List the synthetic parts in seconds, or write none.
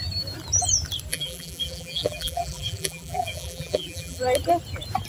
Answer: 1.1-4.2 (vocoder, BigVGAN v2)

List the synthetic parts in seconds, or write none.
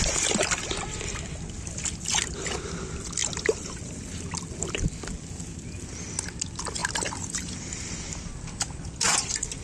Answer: 3.2-4.0 (vocoder, BigVGAN v2); 6.8-7.3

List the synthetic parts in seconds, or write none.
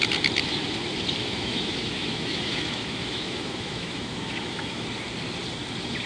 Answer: 1.2-4.9 (autoencoder, DAC-VAE)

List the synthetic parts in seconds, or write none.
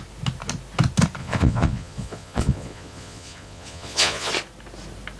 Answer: 1.2-4.3 (vocoder, Vocos)